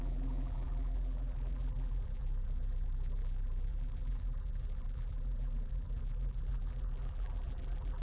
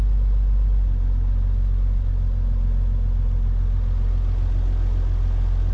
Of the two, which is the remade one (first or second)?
first